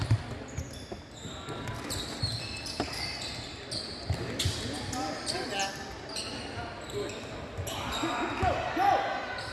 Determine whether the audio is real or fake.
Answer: real